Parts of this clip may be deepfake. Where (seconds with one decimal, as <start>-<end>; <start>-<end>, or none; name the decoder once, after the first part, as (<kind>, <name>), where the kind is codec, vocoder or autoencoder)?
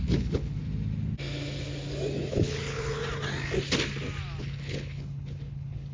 0.0-0.6 (codec, HILCodec); 2.3-3.0; 4.4-5.9